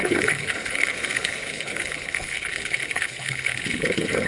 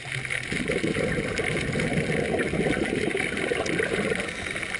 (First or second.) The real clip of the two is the second